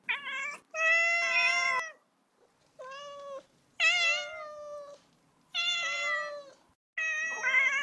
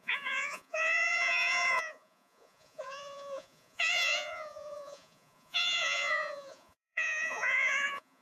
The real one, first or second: first